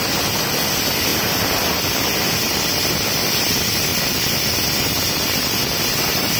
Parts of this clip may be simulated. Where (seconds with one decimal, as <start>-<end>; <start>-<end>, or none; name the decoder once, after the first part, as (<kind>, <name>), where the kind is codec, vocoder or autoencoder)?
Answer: none